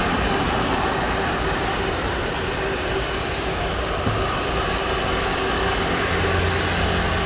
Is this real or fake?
real